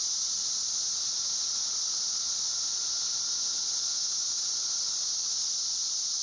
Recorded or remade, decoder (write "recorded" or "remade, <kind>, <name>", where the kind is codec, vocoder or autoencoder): recorded